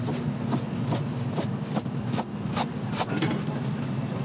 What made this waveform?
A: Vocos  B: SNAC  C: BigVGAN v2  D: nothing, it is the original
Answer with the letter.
D